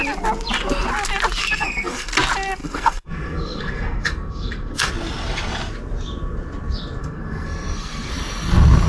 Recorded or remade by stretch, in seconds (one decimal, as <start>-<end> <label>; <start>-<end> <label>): 0.0-1.4 recorded; 1.4-2.1 remade; 2.1-2.6 recorded; 2.6-4.9 remade; 4.9-7.0 recorded; 7.0-8.1 remade; 8.1-8.9 recorded